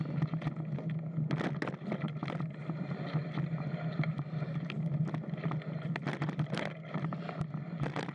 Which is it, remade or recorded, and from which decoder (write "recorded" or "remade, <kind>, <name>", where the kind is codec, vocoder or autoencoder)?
recorded